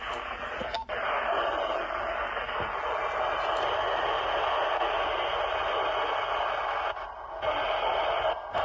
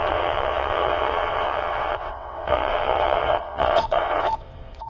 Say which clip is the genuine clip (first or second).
first